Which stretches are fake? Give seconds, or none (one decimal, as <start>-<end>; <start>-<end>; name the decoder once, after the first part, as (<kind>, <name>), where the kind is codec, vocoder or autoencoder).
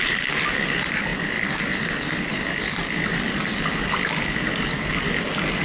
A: none